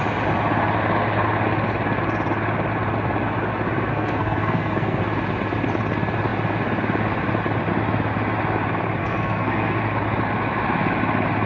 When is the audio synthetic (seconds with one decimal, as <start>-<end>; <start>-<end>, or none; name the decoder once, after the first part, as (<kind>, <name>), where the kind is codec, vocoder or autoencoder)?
3.9-5.0 (codec, SNAC); 9.0-9.8